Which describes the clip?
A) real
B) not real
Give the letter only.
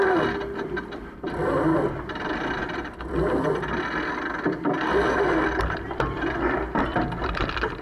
A